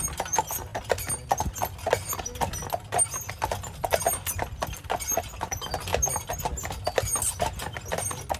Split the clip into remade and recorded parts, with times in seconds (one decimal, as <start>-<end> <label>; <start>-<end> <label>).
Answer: 0.0-8.4 recorded